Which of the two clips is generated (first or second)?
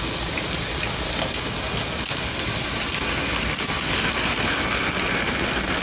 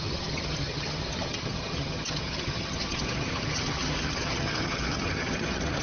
second